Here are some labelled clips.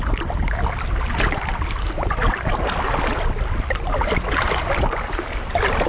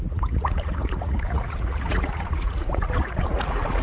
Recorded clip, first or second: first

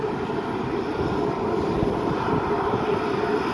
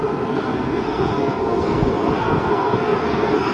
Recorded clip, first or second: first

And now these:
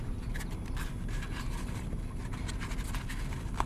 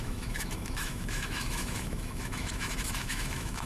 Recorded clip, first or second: first